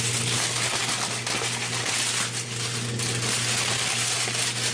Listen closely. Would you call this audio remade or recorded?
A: recorded